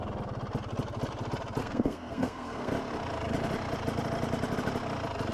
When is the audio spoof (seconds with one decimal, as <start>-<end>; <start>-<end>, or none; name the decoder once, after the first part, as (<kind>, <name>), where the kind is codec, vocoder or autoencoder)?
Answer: 1.6-2.7 (codec, SNAC)